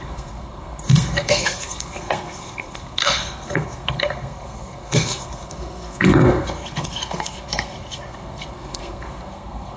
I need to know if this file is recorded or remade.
remade